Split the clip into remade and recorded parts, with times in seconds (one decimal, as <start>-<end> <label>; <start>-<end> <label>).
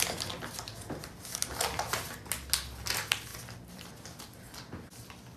0.0-3.3 recorded; 3.3-3.9 remade; 3.9-5.4 recorded